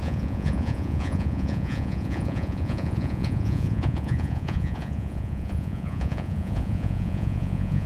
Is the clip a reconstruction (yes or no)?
yes